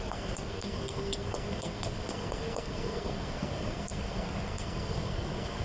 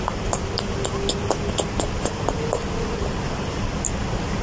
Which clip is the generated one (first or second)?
first